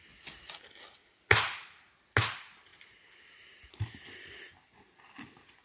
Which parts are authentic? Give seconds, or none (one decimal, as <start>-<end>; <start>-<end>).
0.0-1.0; 1.9-5.6